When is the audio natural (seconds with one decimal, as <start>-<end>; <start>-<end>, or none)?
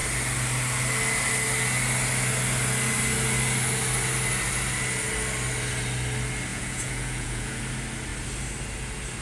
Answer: 0.0-6.5; 7.6-9.2